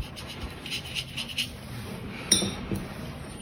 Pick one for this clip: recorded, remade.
remade